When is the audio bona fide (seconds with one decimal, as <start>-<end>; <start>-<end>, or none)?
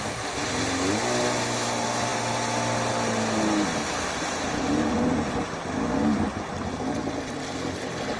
0.0-8.2